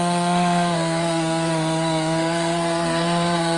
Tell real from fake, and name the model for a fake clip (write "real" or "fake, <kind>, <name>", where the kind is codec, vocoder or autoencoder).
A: fake, codec, SNAC